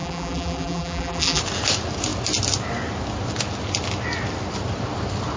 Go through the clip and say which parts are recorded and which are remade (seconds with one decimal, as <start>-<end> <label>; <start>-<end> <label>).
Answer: 0.0-1.4 remade; 1.4-5.4 recorded